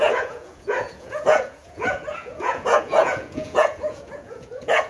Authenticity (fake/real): fake